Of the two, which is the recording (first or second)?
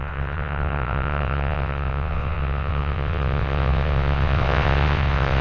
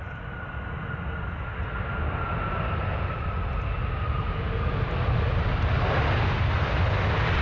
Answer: second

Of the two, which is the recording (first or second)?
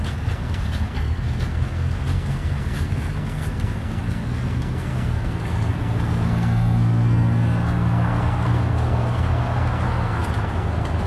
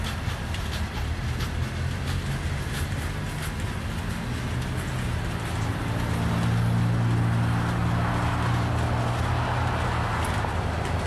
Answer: second